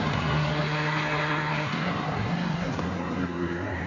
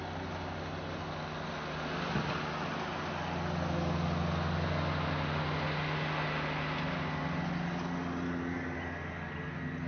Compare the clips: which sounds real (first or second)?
second